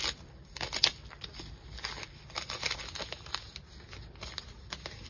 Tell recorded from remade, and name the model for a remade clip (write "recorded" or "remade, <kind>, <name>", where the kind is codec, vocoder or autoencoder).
recorded